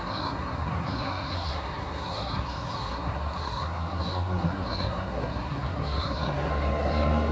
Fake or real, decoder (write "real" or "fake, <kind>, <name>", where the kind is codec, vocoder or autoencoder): fake, codec, SNAC